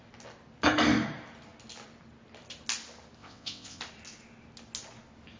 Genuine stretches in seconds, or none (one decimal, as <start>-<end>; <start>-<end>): 0.0-3.2; 3.8-5.4